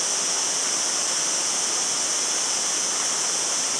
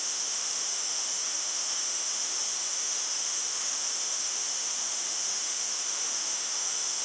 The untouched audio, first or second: first